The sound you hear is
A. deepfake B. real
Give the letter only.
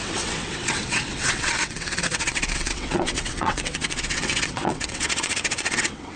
A